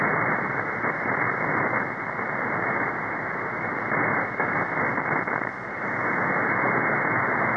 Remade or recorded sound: recorded